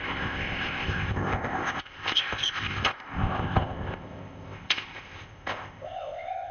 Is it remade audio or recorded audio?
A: remade